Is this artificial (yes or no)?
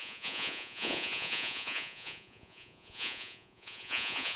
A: yes